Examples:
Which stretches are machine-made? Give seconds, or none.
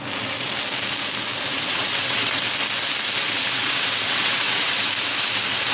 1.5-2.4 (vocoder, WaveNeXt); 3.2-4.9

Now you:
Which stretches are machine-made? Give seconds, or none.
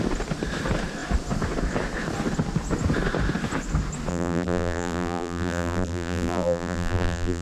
4.1-7.4 (vocoder, BigVGAN v2)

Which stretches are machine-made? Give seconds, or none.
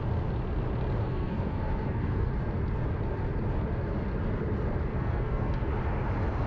1.0-2.3 (codec, SNAC); 4.9-5.7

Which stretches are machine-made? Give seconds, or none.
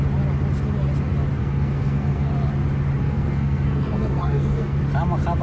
1.4-2.3 (codec, SNAC); 3.0-4.8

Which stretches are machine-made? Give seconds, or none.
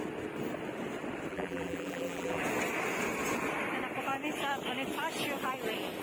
1.3-2.4 (vocoder, BigVGAN v2)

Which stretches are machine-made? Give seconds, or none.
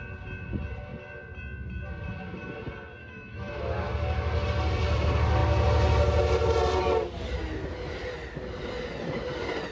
3.0-3.6 (autoencoder, DAC-VAE)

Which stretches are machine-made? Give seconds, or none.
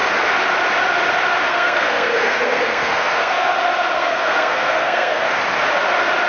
1.5-3.5 (codec, SNAC); 4.0-5.4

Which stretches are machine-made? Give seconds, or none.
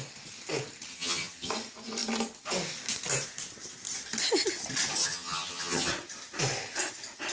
0.9-1.5 (vocoder, HiFi-GAN); 5.0-5.9